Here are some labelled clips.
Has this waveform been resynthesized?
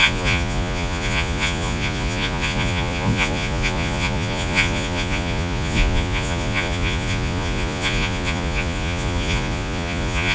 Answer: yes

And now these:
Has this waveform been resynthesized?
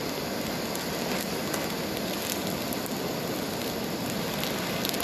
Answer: no